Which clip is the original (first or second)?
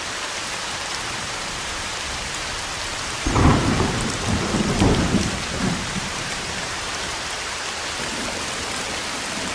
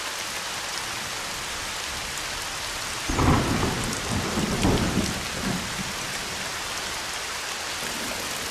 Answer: second